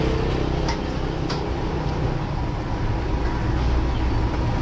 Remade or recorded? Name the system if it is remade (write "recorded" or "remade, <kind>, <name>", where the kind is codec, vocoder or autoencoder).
recorded